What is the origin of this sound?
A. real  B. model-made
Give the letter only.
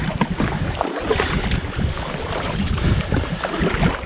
A